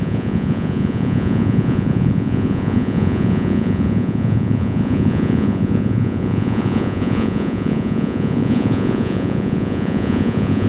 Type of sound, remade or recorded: remade